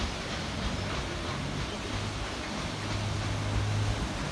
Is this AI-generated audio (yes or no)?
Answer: no